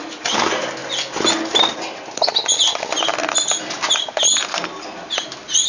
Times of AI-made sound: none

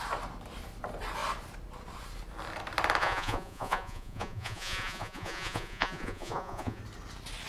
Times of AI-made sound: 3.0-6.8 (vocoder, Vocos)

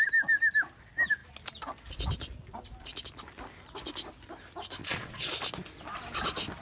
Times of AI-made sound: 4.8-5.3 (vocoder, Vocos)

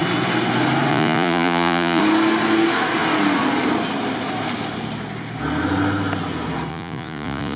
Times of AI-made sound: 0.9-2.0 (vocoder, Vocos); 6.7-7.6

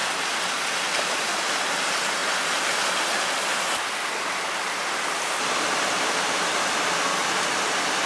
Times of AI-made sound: none